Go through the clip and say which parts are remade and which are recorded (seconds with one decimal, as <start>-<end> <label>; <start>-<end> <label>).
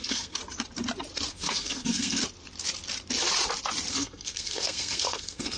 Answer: 0.0-0.4 remade; 0.4-1.3 recorded; 1.3-2.2 remade; 2.2-3.9 recorded; 3.9-5.6 remade